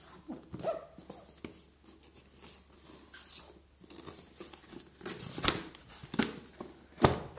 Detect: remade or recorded recorded